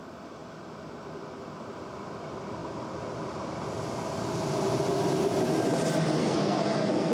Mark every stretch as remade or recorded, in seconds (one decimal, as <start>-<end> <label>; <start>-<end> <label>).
0.0-6.2 recorded; 6.2-7.1 remade